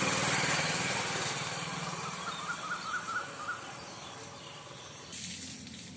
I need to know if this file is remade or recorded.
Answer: recorded